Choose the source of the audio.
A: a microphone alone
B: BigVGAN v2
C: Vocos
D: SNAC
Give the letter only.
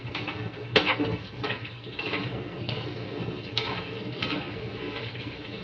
D